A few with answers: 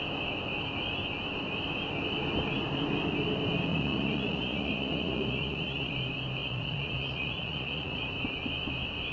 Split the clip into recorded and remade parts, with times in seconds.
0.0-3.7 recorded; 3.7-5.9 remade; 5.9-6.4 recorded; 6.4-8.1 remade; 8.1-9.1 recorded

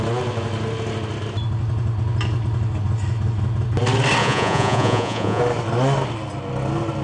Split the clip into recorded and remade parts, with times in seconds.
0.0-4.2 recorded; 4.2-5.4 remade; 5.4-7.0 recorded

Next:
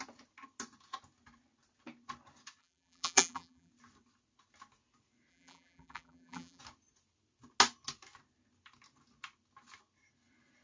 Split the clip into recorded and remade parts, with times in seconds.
0.0-2.6 recorded; 2.6-3.7 remade; 3.7-5.3 recorded; 5.3-6.6 remade; 6.6-10.6 recorded

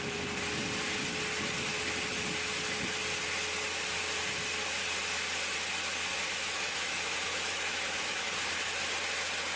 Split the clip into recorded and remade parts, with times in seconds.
0.0-6.1 recorded; 6.1-8.3 remade; 8.3-9.6 recorded

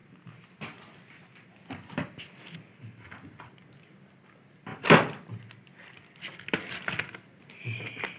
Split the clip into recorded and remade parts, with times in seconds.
0.0-4.7 recorded; 4.7-6.2 remade; 6.2-8.2 recorded